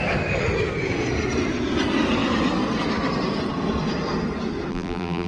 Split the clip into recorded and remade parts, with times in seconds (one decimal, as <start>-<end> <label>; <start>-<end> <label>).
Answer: 0.0-4.7 recorded; 4.7-5.3 remade